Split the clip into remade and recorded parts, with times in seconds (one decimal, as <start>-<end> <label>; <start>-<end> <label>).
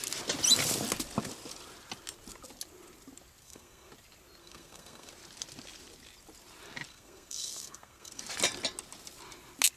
0.0-3.4 recorded; 3.4-3.9 remade; 3.9-4.4 recorded; 4.4-5.1 remade; 5.1-6.9 recorded; 6.9-8.2 remade; 8.2-9.8 recorded